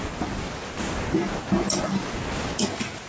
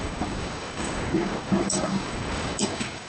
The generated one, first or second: second